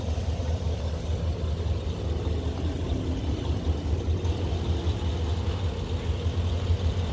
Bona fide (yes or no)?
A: yes